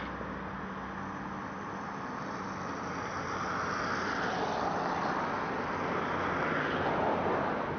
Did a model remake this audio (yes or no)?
no